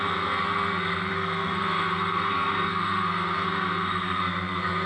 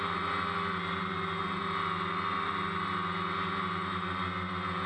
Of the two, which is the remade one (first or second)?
first